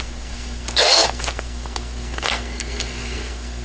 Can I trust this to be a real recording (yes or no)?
no